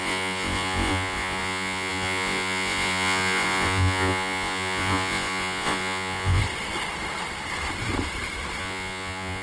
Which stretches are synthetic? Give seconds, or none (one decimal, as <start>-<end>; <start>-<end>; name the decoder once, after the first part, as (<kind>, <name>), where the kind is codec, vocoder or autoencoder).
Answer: 0.0-6.4 (vocoder, Vocos); 8.6-9.4